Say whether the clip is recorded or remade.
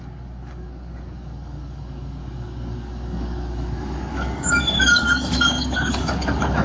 remade